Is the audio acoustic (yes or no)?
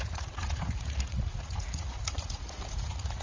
no